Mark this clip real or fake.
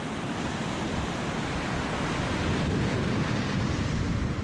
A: real